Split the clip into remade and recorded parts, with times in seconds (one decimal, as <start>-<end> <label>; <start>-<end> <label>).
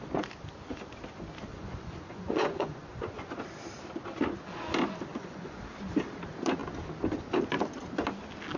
0.0-1.5 recorded; 1.5-3.4 remade; 3.4-5.1 recorded; 5.1-5.6 remade; 5.6-8.6 recorded